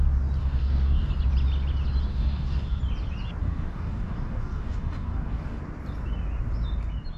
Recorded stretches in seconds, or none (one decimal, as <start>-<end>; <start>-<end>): 0.0-0.4; 1.1-2.1; 2.8-3.4; 5.6-7.2